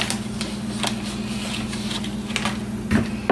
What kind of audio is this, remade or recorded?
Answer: recorded